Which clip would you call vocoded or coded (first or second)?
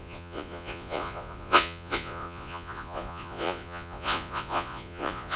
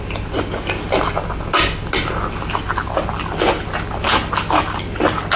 first